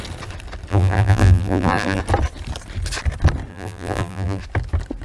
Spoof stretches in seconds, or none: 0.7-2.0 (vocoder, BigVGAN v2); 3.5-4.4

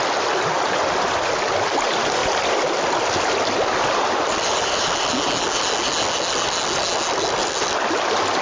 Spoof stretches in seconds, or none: 2.2-5.1 (vocoder, BigVGAN v2)